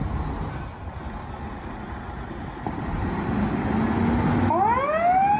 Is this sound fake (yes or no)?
no